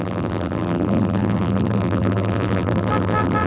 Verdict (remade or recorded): remade